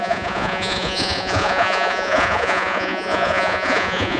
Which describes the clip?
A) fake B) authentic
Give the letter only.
A